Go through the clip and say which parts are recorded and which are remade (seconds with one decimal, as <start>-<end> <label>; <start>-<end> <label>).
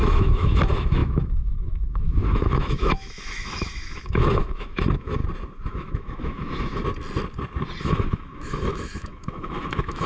0.0-5.2 remade; 5.2-5.7 recorded; 5.7-6.8 remade; 6.8-7.8 recorded; 7.8-10.1 remade